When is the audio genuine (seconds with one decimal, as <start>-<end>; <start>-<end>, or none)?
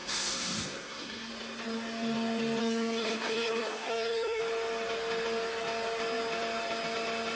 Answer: 1.3-2.6; 4.4-7.4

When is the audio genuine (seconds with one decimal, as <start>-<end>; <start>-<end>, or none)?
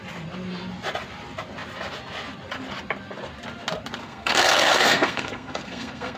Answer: 0.0-4.0